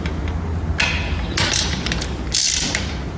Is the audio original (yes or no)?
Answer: yes